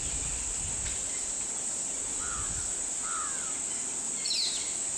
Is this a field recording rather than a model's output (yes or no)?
yes